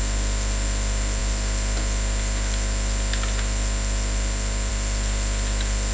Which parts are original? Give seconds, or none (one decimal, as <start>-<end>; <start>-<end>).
0.0-5.9

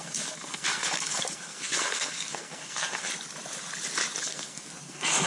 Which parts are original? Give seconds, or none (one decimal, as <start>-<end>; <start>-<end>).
3.1-4.2